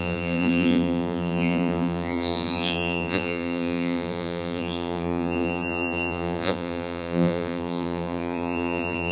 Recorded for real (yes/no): no